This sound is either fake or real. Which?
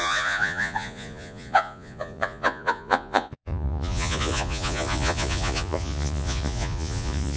fake